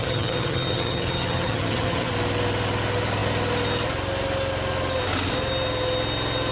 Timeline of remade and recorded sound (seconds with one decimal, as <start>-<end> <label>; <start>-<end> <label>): 0.0-2.1 remade; 2.1-6.5 recorded